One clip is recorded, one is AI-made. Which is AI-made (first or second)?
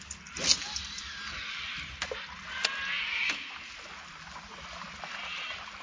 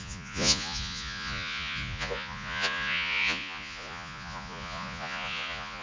second